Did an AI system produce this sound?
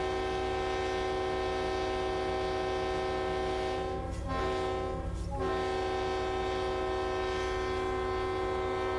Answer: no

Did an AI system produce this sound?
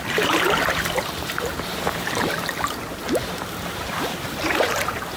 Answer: yes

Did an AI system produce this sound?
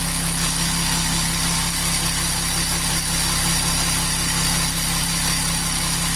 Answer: no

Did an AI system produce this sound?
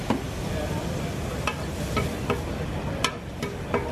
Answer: no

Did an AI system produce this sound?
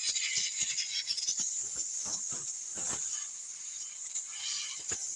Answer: no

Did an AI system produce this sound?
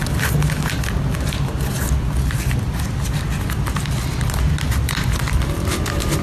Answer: no